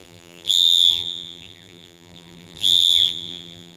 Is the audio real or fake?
fake